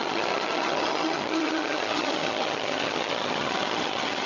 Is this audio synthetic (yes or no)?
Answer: yes